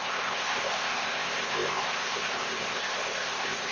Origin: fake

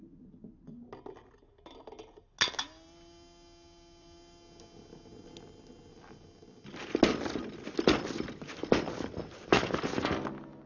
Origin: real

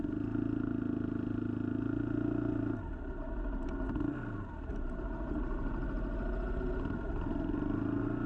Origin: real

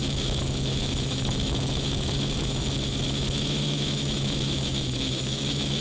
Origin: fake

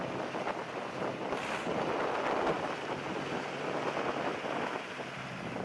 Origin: real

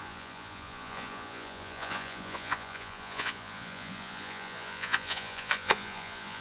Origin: fake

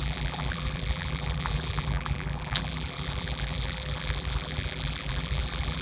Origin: fake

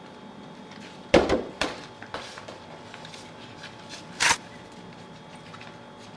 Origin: real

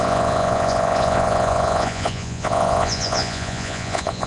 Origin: fake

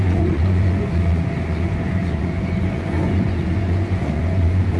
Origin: fake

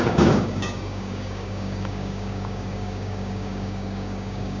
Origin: fake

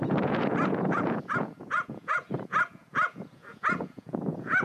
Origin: fake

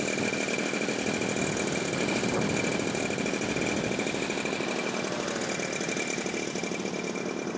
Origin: real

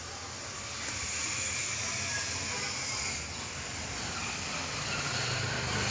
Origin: real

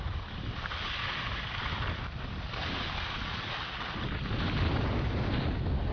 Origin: real